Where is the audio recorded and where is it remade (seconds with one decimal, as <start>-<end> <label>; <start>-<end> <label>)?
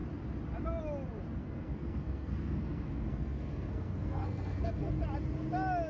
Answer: 0.0-1.4 recorded; 1.4-4.9 remade; 4.9-5.9 recorded